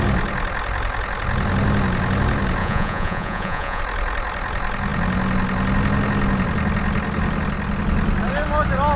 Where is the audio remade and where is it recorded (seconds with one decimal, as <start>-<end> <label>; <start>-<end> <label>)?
0.0-2.6 recorded; 2.6-3.8 remade; 3.8-9.0 recorded